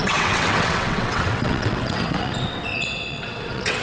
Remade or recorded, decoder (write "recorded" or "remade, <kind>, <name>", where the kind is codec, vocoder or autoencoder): remade, vocoder, WaveNeXt